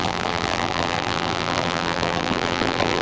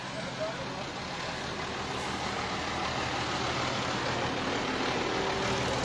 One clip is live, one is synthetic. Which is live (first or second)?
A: second